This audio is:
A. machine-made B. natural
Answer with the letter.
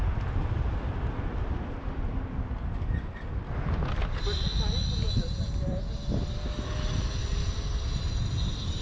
B